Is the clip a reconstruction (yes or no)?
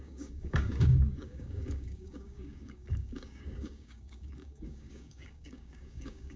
yes